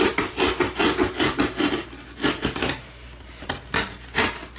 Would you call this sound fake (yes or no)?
no